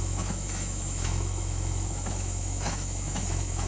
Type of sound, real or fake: fake